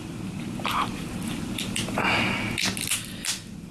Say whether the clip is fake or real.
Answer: real